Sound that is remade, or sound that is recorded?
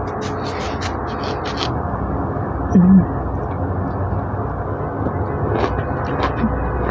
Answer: recorded